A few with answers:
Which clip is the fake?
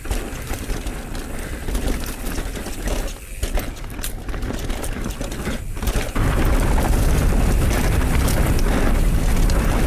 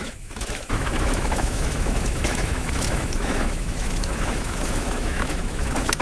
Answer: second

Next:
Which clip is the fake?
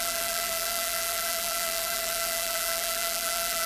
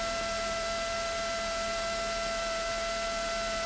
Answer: first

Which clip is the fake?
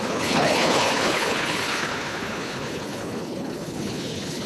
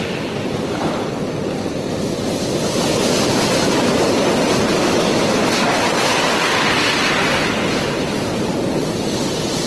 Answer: first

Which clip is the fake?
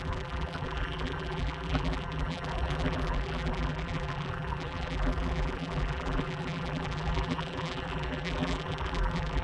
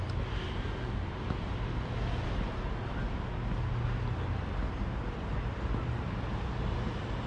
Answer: first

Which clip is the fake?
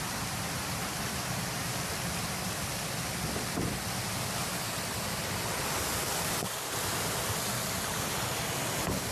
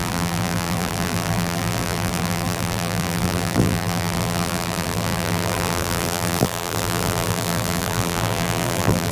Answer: second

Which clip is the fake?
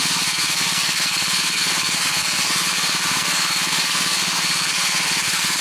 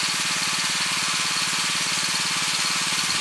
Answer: first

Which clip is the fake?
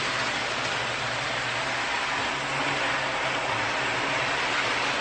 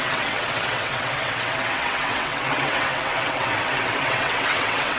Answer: second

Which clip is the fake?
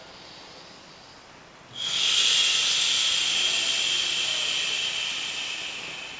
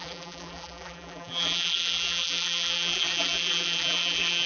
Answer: second